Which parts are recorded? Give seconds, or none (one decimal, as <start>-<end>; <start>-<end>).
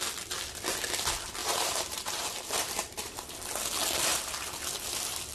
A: 0.0-1.4; 3.3-4.1; 4.6-5.3